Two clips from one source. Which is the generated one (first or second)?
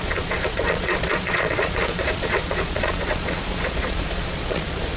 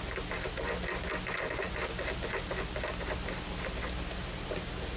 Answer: first